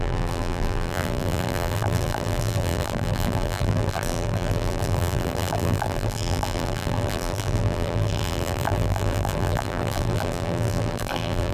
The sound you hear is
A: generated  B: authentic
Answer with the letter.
A